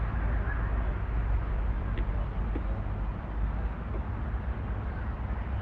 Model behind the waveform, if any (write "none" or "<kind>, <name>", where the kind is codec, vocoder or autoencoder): none